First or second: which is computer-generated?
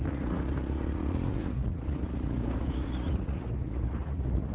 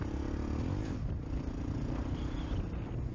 first